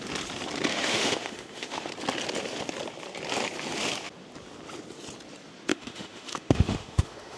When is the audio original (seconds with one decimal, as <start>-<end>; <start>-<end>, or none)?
0.0-0.7; 1.9-5.7